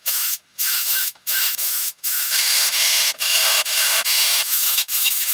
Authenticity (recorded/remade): remade